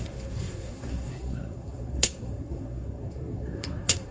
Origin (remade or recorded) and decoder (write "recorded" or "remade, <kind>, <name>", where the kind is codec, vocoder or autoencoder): remade, codec, SNAC